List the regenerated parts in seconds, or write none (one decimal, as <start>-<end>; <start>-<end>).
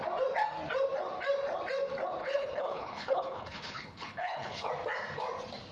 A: 2.2-4.7